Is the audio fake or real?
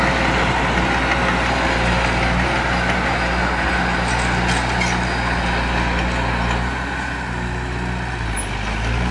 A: real